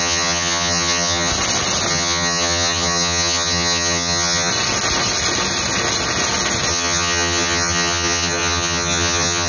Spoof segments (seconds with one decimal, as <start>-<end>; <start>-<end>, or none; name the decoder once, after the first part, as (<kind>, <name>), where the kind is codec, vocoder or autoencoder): 0.0-1.3 (vocoder, HiFi-GAN); 1.9-4.5; 6.7-9.5